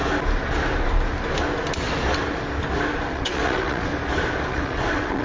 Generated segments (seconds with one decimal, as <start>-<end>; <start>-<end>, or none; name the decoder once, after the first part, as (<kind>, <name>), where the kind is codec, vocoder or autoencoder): 3.1-3.9 (vocoder, WaveNeXt); 4.5-5.2